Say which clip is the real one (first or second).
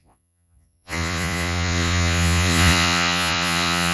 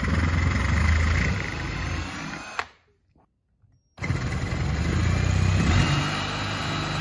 second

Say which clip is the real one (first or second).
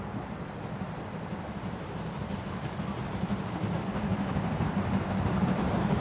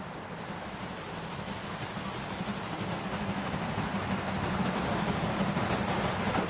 second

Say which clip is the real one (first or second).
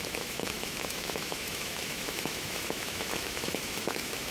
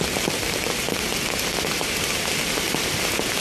second